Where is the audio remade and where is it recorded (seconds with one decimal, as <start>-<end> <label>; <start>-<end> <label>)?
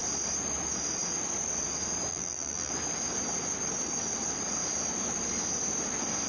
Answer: 0.0-2.1 recorded; 2.1-2.7 remade; 2.7-6.3 recorded